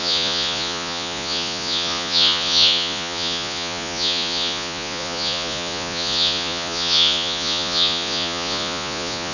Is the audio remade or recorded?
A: remade